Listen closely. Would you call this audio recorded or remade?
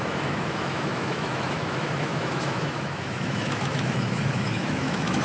remade